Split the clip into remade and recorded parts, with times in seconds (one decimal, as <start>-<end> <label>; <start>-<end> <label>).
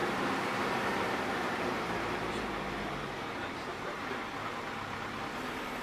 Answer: 0.0-4.2 remade; 4.2-5.2 recorded; 5.2-5.8 remade